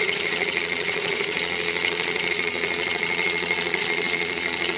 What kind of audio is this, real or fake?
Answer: fake